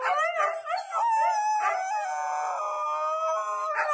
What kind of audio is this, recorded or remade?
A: recorded